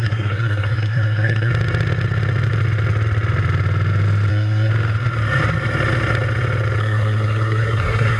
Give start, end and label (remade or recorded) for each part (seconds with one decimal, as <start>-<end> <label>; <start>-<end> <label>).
0.0-1.5 remade; 1.5-4.3 recorded; 4.3-4.7 remade; 4.7-6.8 recorded; 6.8-8.2 remade